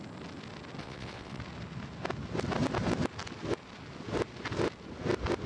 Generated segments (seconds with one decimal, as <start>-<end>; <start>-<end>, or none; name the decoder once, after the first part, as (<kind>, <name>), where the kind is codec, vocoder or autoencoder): 0.8-1.4 (vocoder, WaveNeXt)